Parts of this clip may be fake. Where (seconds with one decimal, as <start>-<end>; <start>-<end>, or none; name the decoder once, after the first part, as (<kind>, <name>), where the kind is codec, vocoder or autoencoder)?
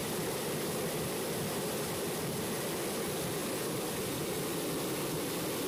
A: 0.0-2.3 (vocoder, BigVGAN v2); 3.4-4.7